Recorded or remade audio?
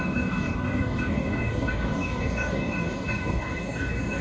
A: remade